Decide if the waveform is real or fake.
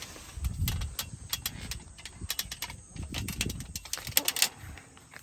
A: real